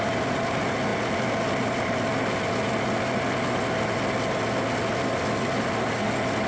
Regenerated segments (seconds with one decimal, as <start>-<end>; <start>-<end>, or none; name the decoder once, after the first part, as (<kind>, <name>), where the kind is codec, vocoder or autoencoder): none